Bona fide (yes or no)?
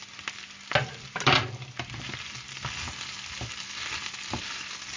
yes